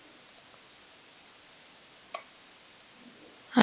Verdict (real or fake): real